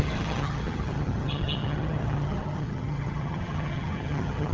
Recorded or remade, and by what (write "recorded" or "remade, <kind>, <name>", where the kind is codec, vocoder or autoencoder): remade, vocoder, HiFi-GAN